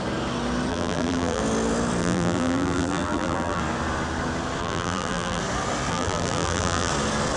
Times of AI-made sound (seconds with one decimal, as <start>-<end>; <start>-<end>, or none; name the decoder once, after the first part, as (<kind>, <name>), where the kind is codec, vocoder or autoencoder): 0.7-1.4 (vocoder, BigVGAN v2); 2.0-3.6; 4.6-5.4; 5.9-6.9